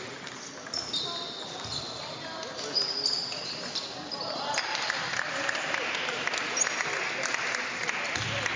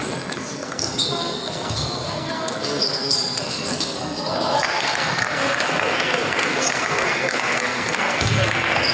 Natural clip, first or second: first